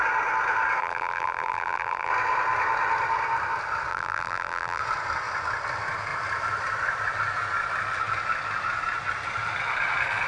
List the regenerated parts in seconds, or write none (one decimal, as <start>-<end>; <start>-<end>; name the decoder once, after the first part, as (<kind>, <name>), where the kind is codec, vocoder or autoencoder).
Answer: 0.8-2.1 (vocoder, BigVGAN v2); 3.9-4.8